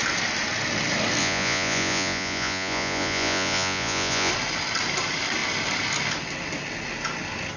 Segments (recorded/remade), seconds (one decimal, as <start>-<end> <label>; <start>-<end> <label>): 0.0-1.2 recorded; 1.2-4.3 remade; 4.3-7.6 recorded